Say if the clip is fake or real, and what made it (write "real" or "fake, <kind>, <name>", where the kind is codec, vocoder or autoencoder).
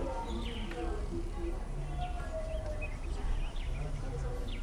real